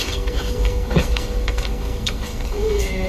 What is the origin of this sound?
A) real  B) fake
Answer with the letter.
B